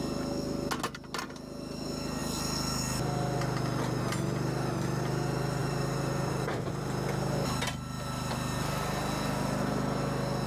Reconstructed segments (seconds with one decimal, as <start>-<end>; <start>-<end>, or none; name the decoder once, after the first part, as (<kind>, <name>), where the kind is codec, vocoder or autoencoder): 5.6-6.7 (vocoder, BigVGAN v2)